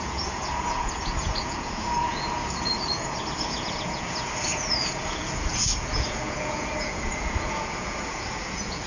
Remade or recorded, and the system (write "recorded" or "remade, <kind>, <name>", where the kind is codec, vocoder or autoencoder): remade, vocoder, Vocos